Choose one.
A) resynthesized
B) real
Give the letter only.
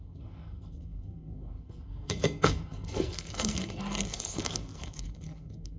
A